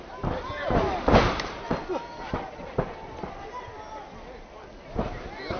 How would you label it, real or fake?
real